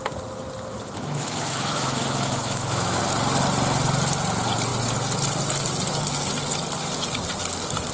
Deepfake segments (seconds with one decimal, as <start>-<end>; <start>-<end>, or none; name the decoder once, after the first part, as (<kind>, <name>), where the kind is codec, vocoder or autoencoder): 0.7-3.0 (autoencoder, DAC-VAE)